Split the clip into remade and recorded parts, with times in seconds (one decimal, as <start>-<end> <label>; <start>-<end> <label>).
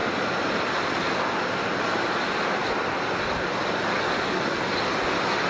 0.0-5.5 recorded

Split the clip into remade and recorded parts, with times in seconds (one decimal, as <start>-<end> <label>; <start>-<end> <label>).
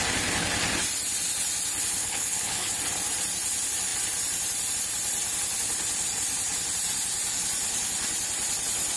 0.0-2.0 recorded; 2.0-2.7 remade; 2.7-9.0 recorded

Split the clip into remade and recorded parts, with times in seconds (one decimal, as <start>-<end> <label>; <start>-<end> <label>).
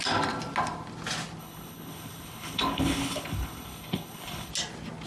0.0-1.4 recorded; 1.4-4.5 remade; 4.5-5.1 recorded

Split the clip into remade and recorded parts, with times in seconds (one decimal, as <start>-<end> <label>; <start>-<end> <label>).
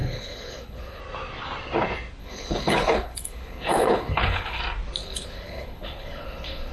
0.0-1.0 remade; 1.0-2.2 recorded; 2.2-4.6 remade; 4.6-5.0 recorded; 5.0-6.7 remade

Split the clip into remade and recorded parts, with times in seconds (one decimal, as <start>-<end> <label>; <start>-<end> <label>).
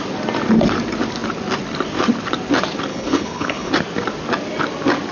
0.0-2.9 recorded; 2.9-3.7 remade; 3.7-5.1 recorded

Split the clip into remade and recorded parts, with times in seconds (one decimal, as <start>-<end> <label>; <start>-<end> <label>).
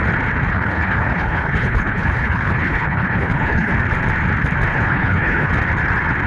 0.0-0.5 recorded; 0.5-3.7 remade; 3.7-4.7 recorded; 4.7-5.5 remade; 5.5-6.3 recorded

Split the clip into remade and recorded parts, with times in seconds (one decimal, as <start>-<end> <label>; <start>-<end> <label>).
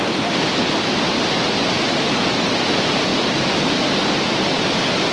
0.0-5.1 recorded